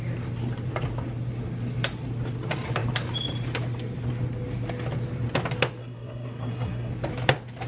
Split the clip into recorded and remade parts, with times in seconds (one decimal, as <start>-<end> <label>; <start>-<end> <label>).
0.0-5.8 recorded; 5.8-6.9 remade; 6.9-7.7 recorded